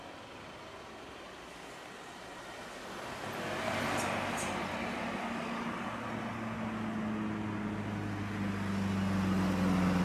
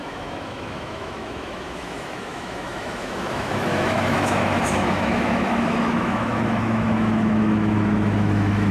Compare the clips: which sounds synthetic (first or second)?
second